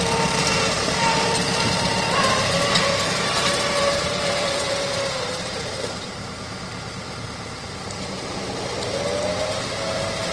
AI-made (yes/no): yes